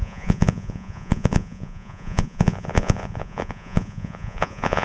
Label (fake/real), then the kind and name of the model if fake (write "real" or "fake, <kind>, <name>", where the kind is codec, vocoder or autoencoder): fake, vocoder, Vocos